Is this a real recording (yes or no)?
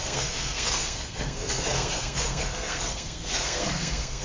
no